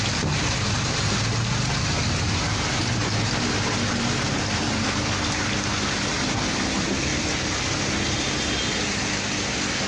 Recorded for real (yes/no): yes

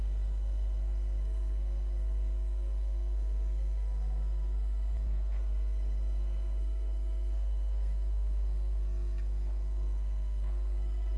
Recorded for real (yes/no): no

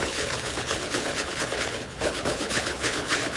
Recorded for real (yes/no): no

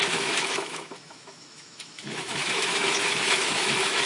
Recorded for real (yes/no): no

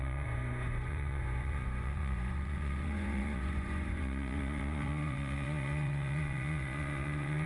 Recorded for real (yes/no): no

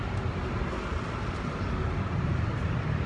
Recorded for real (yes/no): yes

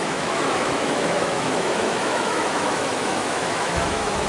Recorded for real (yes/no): no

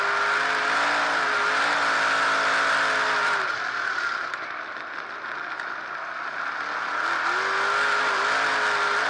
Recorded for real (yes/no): yes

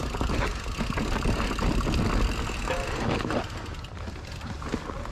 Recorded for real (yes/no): yes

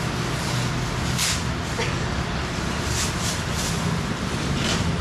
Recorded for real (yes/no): yes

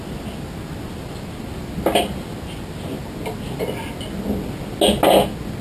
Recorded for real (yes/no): yes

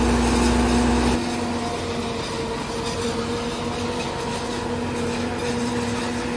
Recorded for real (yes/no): yes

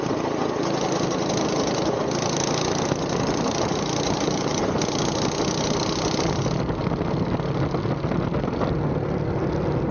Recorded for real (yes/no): yes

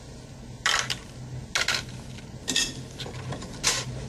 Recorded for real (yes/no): yes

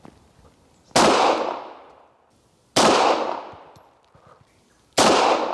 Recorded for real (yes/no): yes